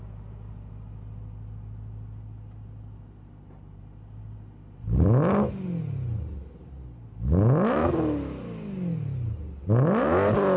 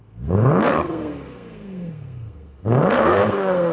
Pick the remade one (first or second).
second